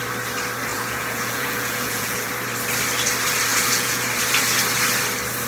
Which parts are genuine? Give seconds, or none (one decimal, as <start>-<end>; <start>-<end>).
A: 0.0-0.7; 2.3-3.5; 4.0-5.5